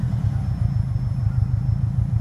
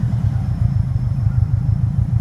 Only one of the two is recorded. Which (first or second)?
first